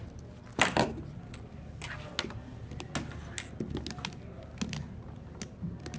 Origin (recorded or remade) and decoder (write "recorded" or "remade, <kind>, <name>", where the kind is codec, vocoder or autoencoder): recorded